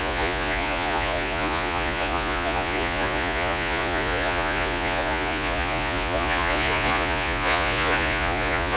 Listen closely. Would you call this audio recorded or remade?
remade